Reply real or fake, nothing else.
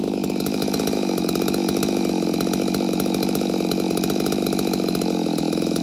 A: fake